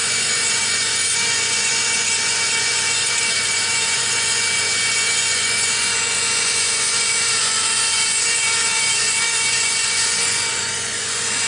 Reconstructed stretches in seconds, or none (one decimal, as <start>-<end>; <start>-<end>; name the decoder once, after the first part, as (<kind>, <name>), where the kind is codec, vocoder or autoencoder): 0.0-11.5 (vocoder, Vocos)